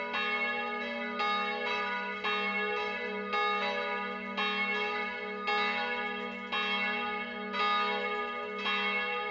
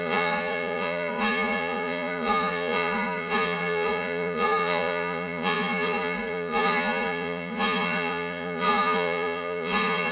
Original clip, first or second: first